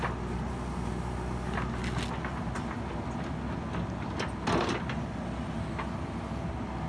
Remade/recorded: recorded